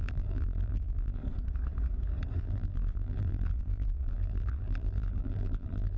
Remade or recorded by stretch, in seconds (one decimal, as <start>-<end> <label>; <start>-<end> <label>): 0.0-1.2 remade; 1.2-2.4 recorded; 2.4-6.0 remade